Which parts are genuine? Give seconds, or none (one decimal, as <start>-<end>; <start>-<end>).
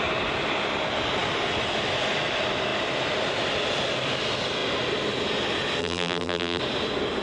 0.0-5.8; 6.6-7.2